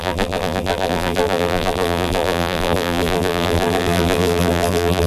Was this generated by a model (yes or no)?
yes